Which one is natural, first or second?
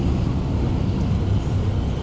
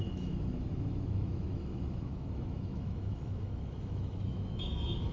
first